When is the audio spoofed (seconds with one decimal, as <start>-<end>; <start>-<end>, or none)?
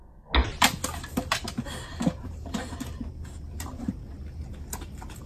1.9-2.7